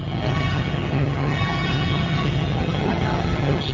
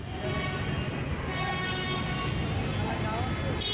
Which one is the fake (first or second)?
first